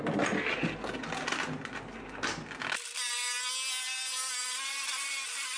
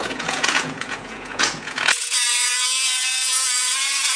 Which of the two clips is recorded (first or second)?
first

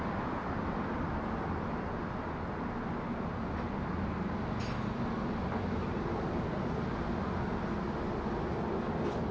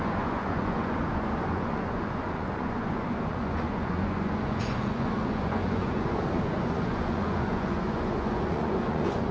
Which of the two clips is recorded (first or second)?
first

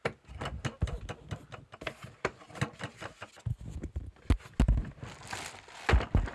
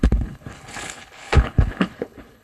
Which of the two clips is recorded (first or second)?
first